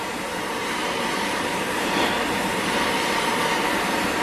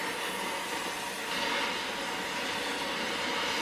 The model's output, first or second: first